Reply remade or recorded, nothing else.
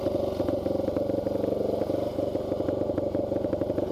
recorded